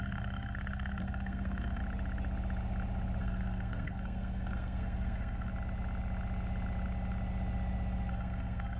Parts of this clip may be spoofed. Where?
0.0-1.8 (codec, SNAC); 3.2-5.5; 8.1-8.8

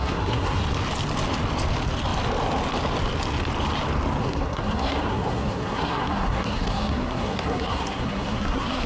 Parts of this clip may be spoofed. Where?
0.0-0.6 (codec, SNAC); 4.2-8.9

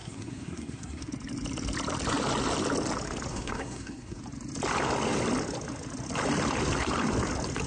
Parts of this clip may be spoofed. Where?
0.0-1.1 (codec, SNAC); 3.3-4.2